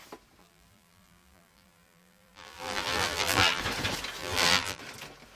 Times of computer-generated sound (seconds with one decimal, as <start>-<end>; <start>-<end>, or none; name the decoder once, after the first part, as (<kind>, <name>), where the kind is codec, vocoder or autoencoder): 0.4-3.6 (vocoder, BigVGAN v2); 4.2-4.8